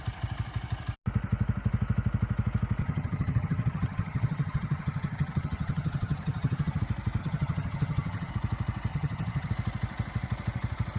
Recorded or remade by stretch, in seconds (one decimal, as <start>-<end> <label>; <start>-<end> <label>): 0.0-2.8 recorded; 2.8-6.8 remade; 6.8-7.2 recorded; 7.2-8.3 remade; 8.3-8.9 recorded; 8.9-9.5 remade; 9.5-11.0 recorded

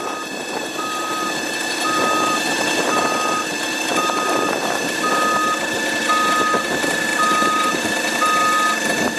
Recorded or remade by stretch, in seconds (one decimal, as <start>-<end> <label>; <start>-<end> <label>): 0.0-0.6 recorded; 0.6-3.0 remade; 3.0-3.9 recorded; 3.9-5.1 remade; 5.1-7.1 recorded; 7.1-8.2 remade; 8.2-9.2 recorded

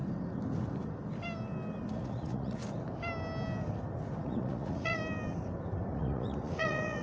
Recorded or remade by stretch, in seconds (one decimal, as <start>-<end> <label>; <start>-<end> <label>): 0.0-1.9 recorded; 1.9-2.6 remade; 2.6-4.2 recorded; 4.2-5.0 remade; 5.0-5.9 recorded; 5.9-7.0 remade

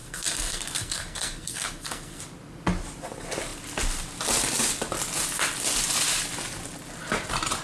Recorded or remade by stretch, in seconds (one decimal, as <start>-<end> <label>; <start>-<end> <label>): 0.0-2.2 remade; 2.2-7.6 recorded

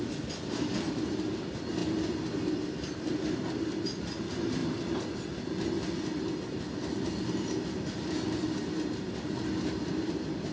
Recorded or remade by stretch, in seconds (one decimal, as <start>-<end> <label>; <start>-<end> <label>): 0.0-10.5 recorded